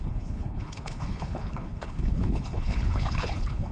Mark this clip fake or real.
fake